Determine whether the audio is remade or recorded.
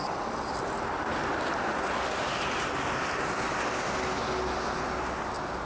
recorded